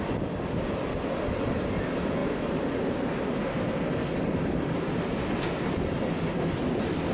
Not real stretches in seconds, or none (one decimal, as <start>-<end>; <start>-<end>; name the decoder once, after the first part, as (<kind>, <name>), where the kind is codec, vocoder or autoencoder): 3.5-4.1 (codec, SNAC)